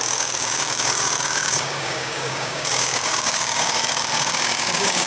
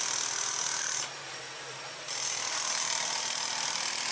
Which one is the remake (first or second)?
first